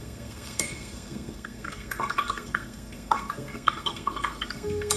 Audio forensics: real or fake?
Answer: fake